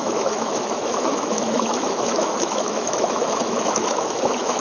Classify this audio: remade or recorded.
remade